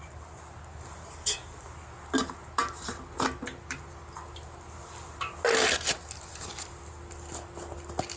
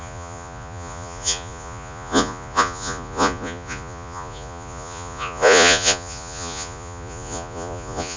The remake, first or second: second